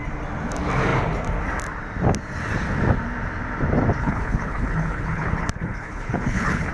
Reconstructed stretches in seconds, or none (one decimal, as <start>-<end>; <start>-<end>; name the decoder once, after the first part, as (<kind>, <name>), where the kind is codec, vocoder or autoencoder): 4.0-6.7 (codec, HILCodec)